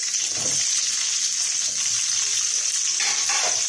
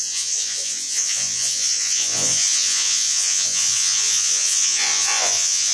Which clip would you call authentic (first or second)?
first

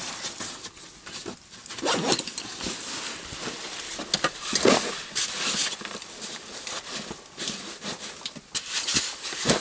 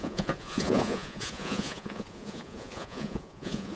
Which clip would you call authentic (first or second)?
first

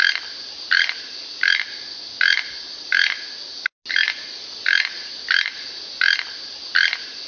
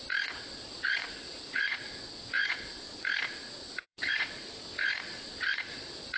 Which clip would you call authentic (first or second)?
first